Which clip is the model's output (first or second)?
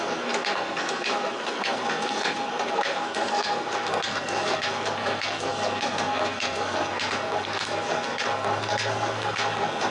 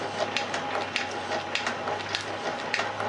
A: first